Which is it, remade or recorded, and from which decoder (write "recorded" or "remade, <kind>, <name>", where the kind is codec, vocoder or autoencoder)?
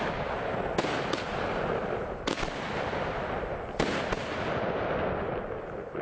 recorded